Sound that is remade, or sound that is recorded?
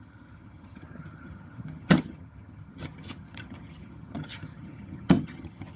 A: remade